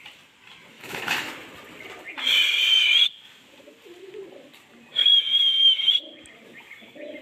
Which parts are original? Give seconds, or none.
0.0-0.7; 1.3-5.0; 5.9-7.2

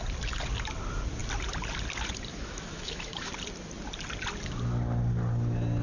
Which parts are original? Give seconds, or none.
0.0-2.3; 3.3-5.8

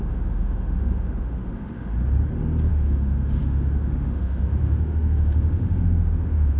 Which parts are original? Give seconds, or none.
1.9-2.7